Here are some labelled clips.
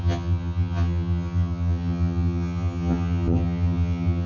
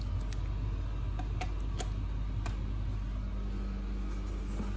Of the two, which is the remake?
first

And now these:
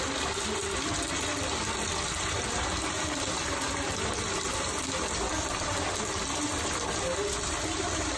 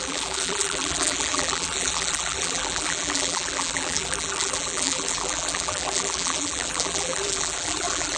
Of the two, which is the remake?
second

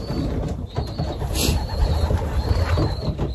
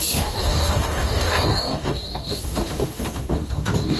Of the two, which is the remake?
second